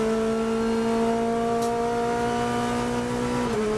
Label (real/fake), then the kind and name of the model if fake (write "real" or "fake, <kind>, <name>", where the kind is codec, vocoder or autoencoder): real